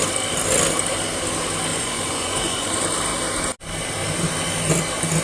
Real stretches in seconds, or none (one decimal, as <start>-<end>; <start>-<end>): 0.0-1.7; 2.7-5.2